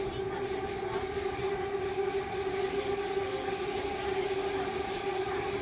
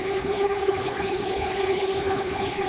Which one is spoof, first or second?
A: second